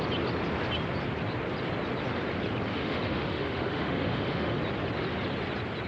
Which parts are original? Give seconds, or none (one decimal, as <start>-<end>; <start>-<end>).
0.0-2.7; 4.6-5.9